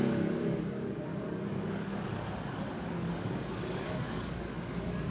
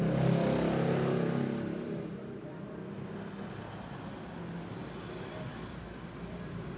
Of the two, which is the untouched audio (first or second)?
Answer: second